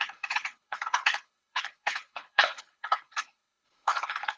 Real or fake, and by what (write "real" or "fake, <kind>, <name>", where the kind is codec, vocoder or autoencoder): fake, codec, HILCodec